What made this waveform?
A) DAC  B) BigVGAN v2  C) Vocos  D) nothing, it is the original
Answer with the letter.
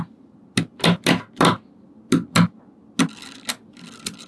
D